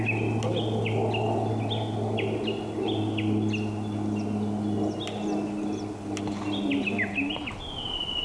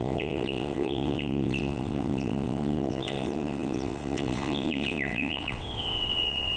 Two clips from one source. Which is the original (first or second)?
first